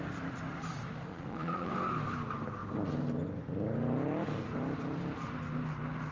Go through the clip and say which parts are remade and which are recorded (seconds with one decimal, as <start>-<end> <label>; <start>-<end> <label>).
0.0-1.1 recorded; 1.1-1.7 remade; 1.7-6.1 recorded